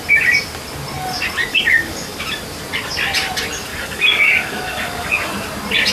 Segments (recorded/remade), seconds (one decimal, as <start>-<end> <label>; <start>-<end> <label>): 0.0-1.5 recorded; 1.5-2.2 remade; 2.2-3.7 recorded; 3.7-5.3 remade; 5.3-5.9 recorded